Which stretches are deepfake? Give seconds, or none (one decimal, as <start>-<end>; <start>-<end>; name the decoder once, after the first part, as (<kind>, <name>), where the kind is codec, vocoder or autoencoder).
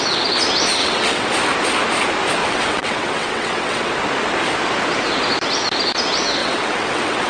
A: 0.8-1.3 (vocoder, WaveNeXt); 2.4-3.9; 6.4-7.3